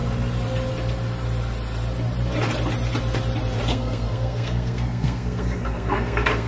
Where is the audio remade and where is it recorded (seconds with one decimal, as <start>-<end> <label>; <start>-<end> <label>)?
0.0-3.7 recorded; 3.7-6.5 remade